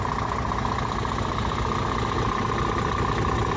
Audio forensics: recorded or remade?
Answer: recorded